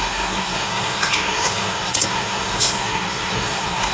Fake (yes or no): yes